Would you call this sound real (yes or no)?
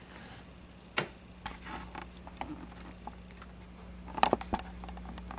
yes